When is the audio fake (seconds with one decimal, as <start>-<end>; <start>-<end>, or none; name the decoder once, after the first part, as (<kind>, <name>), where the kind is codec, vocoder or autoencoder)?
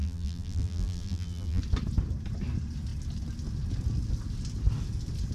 0.0-1.6 (vocoder, BigVGAN v2)